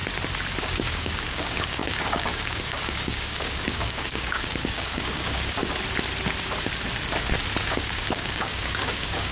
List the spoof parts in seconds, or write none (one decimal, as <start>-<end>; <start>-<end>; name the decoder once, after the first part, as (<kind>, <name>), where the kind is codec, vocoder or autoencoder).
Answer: 0.6-5.6 (codec, DAC); 7.6-9.3